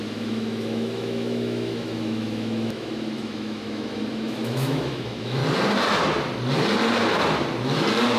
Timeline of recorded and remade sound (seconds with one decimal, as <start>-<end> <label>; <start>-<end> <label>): 0.0-5.4 remade; 5.4-8.2 recorded